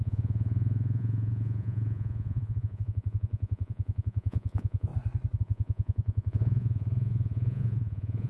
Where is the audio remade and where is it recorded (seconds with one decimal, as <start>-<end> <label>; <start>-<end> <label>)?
0.0-4.9 remade; 4.9-5.4 recorded; 5.4-8.3 remade